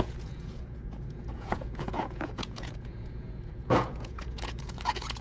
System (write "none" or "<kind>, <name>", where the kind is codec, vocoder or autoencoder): vocoder, Vocos